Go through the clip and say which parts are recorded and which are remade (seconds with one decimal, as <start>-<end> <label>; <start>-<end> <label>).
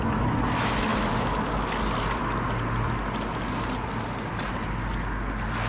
0.0-5.7 recorded